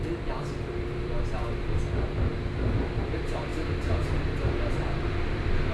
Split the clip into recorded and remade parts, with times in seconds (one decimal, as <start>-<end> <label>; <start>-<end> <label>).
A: 0.0-5.7 recorded